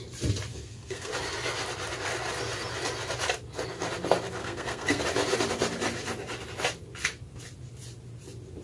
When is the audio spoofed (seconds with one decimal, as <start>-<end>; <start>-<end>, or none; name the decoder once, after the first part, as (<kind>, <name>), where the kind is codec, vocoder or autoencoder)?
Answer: 0.5-1.1 (codec, SNAC); 4.4-5.0